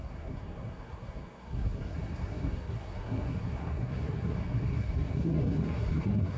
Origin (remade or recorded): remade